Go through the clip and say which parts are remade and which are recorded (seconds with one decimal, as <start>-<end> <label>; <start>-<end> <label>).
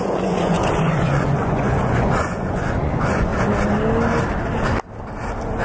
0.0-3.3 remade; 3.3-5.6 recorded